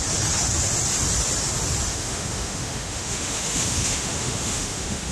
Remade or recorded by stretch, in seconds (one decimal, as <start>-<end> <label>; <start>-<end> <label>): 0.0-1.9 recorded; 1.9-5.1 remade